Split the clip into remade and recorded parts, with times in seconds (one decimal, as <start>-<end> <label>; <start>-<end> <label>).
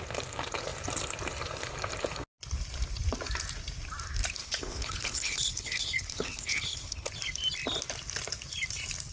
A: 0.0-4.4 recorded; 4.4-7.1 remade; 7.1-9.1 recorded